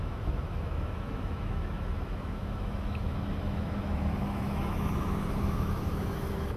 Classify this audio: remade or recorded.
remade